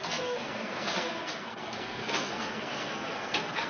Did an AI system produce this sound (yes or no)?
yes